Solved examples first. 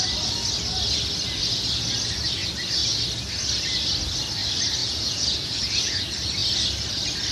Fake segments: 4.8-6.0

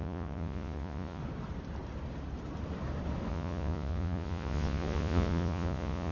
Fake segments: 0.0-1.2; 3.3-6.1

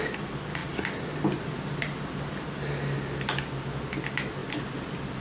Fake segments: none

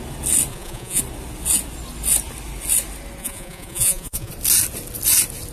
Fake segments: 0.5-1.0; 3.2-4.3

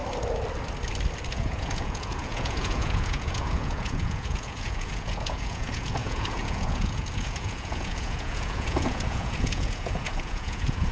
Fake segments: 1.3-10.9